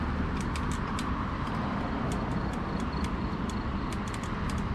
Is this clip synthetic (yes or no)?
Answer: no